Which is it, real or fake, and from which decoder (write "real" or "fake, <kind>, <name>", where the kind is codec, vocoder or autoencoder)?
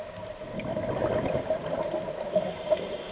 real